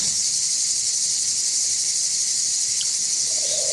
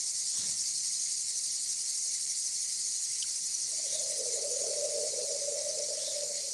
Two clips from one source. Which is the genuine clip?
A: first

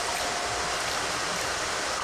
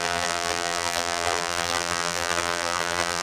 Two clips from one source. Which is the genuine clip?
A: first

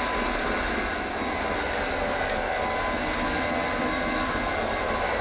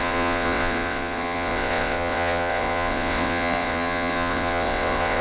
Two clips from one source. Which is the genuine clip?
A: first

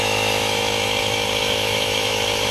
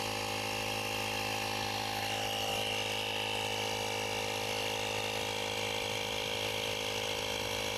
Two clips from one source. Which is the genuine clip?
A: second